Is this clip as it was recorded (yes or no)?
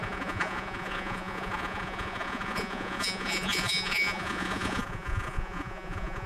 no